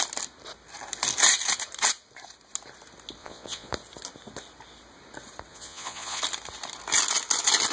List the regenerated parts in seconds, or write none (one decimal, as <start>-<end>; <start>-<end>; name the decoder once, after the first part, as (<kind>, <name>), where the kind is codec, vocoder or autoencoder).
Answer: 3.2-3.7 (vocoder, Vocos); 5.5-6.2